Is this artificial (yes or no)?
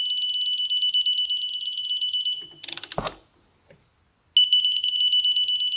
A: no